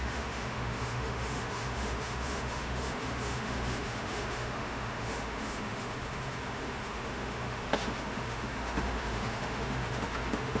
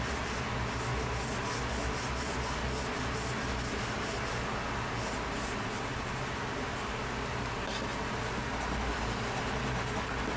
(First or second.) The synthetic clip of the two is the first